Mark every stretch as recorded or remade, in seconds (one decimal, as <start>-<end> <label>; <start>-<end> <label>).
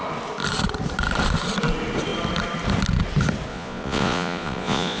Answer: 0.0-3.5 recorded; 3.5-5.0 remade